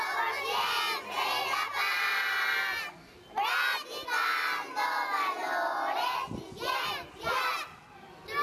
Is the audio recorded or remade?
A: recorded